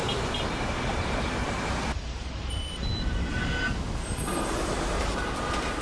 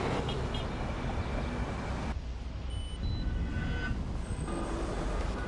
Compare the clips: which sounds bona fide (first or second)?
second